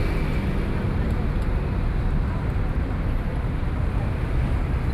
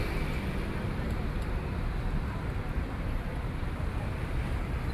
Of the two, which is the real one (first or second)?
first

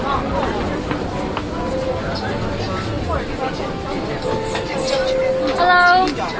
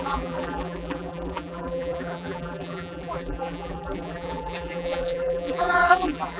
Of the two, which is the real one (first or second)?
first